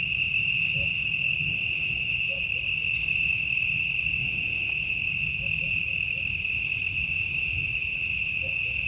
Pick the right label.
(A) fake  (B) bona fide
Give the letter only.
B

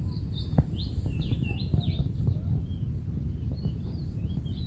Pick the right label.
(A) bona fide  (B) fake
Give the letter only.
A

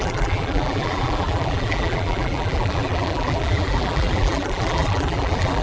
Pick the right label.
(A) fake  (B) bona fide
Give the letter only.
A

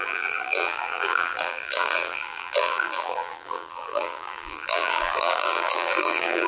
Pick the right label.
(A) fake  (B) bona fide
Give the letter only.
A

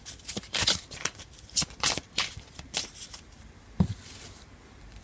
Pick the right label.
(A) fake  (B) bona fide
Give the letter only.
A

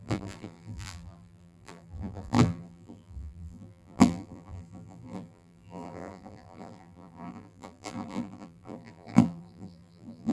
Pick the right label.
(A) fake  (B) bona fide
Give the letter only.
A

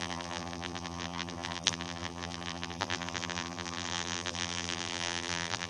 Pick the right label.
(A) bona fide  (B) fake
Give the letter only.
B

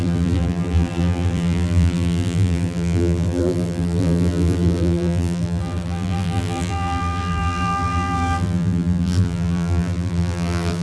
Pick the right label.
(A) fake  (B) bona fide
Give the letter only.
A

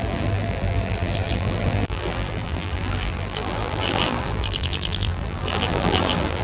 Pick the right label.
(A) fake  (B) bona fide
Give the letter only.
A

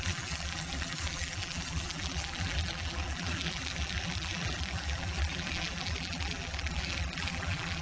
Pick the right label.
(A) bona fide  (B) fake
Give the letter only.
B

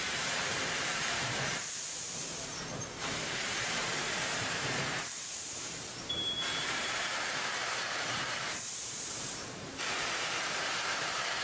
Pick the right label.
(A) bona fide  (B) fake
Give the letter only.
B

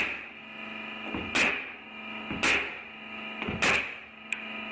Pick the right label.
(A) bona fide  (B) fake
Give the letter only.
A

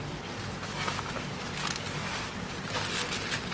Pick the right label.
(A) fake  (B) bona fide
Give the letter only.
B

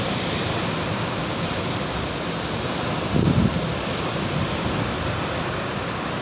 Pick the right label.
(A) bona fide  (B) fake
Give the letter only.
A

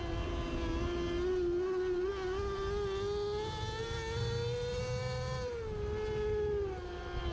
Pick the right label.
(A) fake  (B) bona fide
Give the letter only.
B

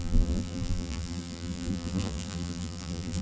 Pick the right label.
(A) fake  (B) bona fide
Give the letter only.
A